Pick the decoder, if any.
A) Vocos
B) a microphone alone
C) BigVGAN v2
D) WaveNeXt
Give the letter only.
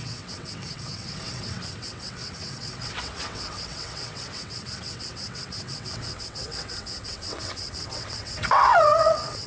D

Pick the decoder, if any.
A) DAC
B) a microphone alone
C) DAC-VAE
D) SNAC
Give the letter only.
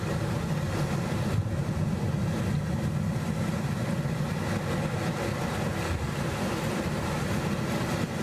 B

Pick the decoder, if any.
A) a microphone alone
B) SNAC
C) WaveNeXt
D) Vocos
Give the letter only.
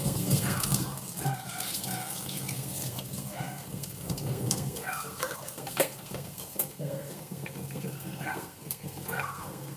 B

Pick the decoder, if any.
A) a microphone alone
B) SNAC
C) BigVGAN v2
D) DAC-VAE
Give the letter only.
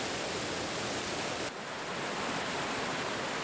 A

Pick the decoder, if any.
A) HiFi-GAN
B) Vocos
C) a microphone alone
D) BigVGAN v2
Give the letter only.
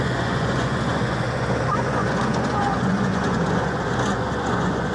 B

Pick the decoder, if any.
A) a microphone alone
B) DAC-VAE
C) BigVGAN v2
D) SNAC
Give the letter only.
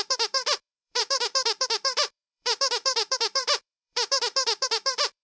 C